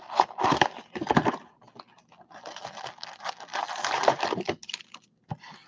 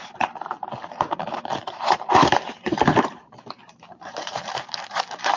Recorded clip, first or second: first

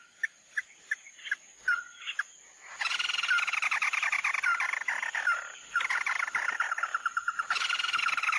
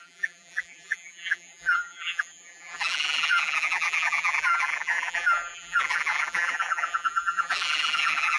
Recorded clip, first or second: first